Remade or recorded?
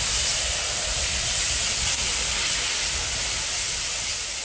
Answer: recorded